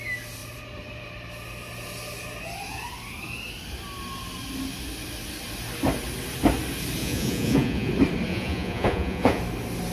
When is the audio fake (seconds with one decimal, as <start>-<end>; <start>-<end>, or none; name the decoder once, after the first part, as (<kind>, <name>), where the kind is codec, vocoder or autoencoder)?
7.0-7.9 (vocoder, Vocos); 8.3-9.4